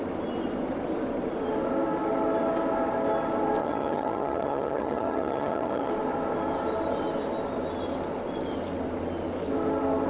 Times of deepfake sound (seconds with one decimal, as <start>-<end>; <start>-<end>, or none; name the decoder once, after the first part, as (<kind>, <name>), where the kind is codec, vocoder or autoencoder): 3.6-5.9 (vocoder, HiFi-GAN)